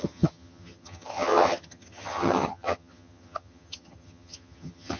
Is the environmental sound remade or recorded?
remade